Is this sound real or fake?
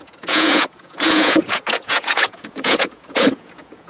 fake